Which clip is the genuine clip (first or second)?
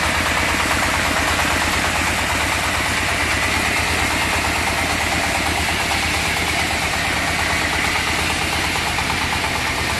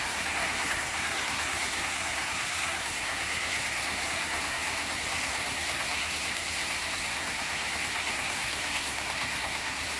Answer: first